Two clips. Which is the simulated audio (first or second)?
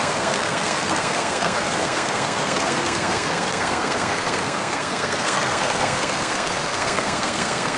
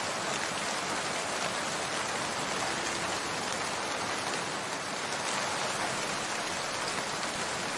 first